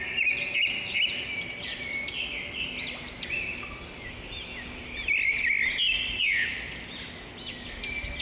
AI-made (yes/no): no